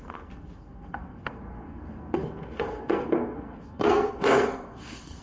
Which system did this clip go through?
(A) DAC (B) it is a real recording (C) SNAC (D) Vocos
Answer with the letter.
C